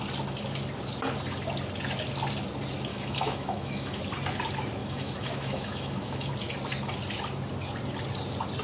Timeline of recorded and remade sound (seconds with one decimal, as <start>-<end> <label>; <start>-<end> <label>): 0.0-2.9 recorded; 2.9-4.0 remade; 4.0-4.8 recorded; 4.8-6.3 remade; 6.3-8.6 recorded